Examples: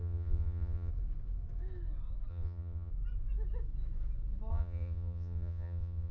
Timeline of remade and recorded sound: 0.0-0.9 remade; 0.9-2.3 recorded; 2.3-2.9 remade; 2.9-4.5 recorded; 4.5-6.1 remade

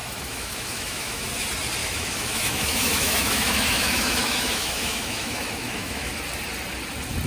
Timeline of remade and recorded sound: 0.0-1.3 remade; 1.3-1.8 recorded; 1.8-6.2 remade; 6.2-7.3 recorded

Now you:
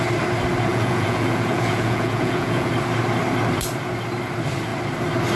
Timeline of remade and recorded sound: 0.0-0.7 recorded; 0.7-2.7 remade; 2.7-5.4 recorded